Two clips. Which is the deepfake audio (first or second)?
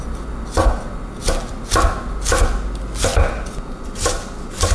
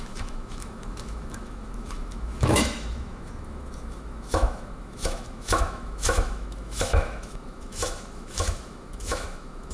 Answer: second